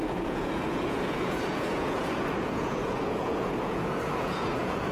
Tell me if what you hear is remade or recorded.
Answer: remade